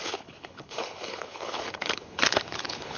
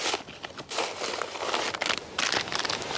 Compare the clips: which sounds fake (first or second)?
first